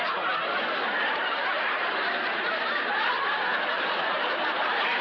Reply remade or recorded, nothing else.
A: remade